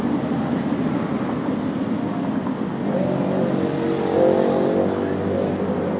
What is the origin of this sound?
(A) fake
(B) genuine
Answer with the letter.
B